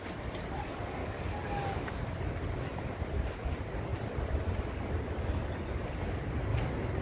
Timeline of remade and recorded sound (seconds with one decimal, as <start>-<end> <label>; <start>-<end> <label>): 0.0-1.0 recorded; 1.0-2.0 remade; 2.0-7.0 recorded